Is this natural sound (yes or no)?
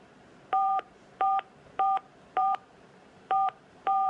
no